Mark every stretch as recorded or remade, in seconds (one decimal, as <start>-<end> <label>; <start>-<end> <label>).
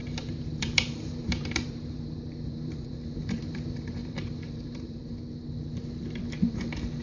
0.0-5.1 remade; 5.1-7.0 recorded